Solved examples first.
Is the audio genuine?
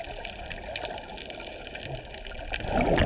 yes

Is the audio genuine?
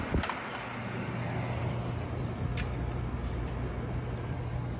yes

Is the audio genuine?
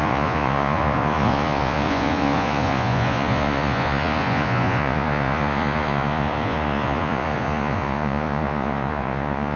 no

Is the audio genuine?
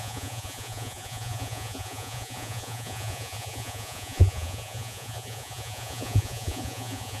no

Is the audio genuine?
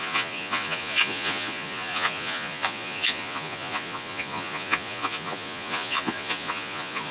no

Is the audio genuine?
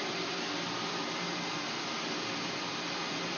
yes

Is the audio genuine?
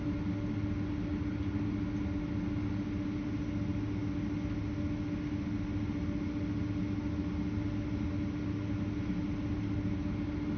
yes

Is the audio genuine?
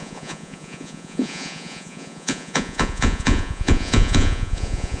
no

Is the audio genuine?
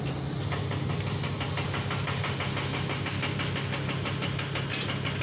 yes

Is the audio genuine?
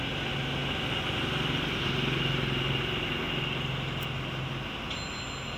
yes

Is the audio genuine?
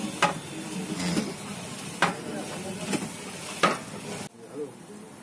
yes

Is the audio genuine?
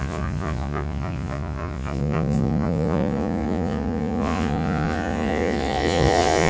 no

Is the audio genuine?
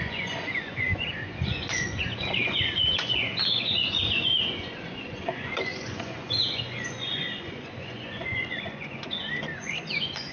no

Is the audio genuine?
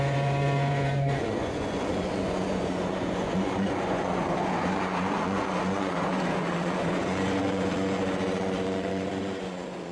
no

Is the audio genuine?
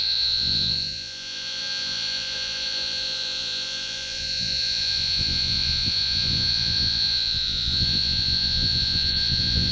no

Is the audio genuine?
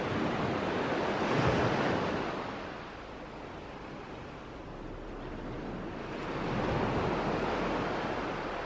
yes